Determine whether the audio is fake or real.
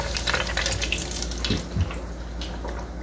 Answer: real